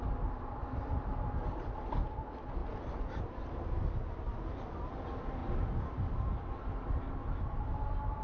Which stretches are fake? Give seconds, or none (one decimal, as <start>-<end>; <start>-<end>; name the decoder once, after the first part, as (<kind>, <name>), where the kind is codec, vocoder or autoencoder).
none

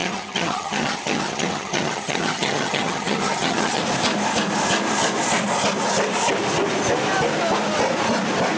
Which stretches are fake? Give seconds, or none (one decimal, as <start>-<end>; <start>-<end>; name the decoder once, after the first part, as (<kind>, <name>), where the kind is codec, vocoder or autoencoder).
0.0-3.8 (vocoder, HiFi-GAN)

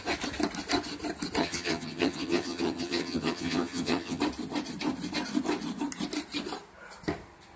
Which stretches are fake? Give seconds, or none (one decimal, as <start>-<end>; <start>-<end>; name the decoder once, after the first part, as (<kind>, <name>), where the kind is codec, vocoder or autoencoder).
1.4-4.2 (vocoder, HiFi-GAN)

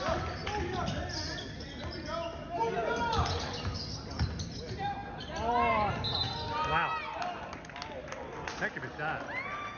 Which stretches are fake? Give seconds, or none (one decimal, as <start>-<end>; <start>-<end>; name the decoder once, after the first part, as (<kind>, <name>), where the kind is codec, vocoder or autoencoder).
none